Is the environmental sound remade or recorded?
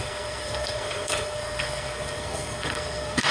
remade